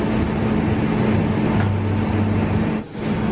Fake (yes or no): no